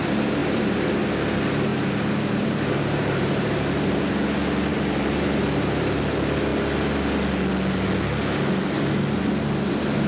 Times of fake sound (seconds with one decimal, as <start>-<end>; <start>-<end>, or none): 0.4-0.9; 1.7-4.0; 4.7-6.0